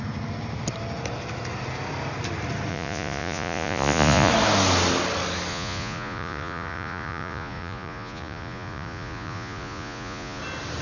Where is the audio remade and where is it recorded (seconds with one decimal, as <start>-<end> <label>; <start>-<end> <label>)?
0.0-2.7 recorded; 2.7-4.3 remade; 4.3-5.5 recorded; 5.5-10.4 remade; 10.4-10.8 recorded